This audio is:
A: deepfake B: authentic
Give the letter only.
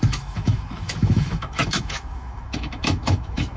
A